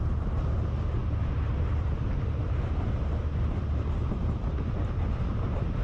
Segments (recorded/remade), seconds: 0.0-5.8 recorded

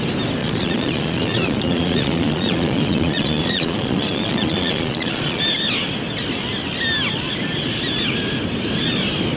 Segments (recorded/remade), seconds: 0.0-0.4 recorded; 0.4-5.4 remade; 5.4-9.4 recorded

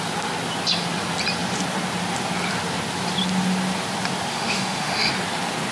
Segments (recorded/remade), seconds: 0.0-4.3 recorded; 4.3-5.1 remade; 5.1-5.7 recorded

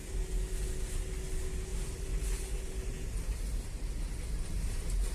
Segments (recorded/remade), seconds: 0.0-5.1 recorded

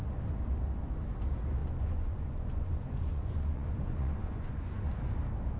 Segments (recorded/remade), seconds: 0.0-1.6 recorded; 1.6-5.0 remade; 5.0-5.6 recorded